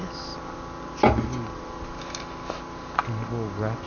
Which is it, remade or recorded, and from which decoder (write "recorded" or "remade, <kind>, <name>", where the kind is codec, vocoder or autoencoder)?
recorded